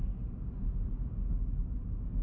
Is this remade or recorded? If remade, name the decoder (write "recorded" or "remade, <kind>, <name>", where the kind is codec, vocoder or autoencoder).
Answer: recorded